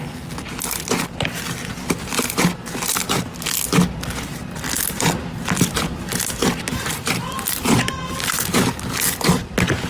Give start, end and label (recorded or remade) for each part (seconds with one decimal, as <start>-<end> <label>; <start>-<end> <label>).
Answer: 0.0-6.7 recorded; 6.7-7.4 remade; 7.4-9.9 recorded